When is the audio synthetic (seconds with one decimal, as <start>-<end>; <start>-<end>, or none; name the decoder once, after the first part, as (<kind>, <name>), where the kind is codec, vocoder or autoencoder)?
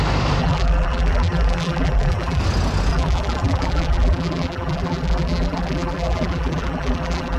0.4-2.4 (vocoder, BigVGAN v2); 2.9-7.4